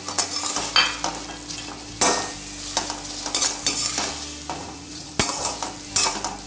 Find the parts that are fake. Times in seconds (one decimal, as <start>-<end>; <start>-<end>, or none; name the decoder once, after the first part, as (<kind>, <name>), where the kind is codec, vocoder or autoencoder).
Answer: 4.6-5.1 (vocoder, Vocos)